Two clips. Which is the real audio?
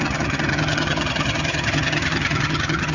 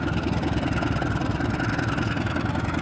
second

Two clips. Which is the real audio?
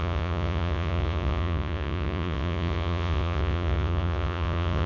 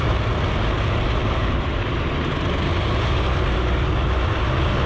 second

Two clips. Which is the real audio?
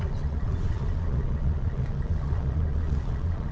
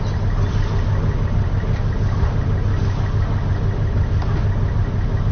second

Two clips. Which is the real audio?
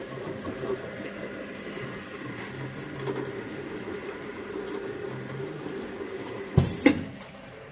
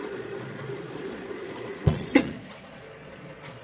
first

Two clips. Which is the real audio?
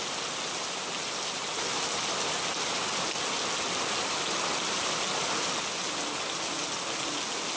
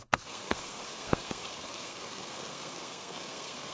first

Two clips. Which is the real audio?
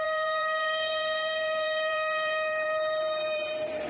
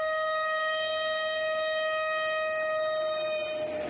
second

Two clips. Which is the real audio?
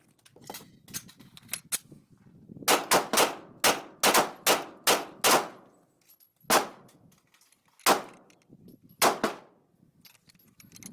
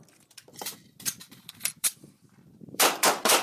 first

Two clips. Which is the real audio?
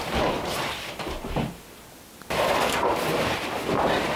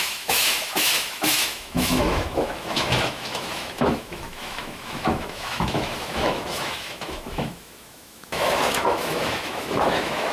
first